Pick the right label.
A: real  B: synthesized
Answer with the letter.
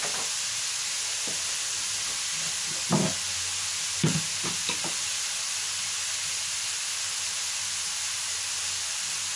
A